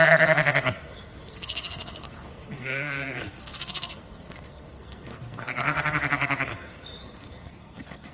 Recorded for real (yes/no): no